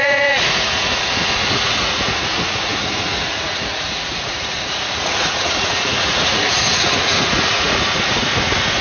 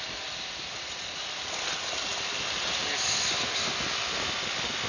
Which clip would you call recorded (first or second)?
second